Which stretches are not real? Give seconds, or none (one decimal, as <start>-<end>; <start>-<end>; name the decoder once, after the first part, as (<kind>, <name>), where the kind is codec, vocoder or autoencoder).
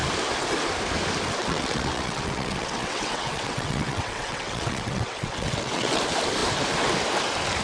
1.4-6.0 (vocoder, WaveNeXt)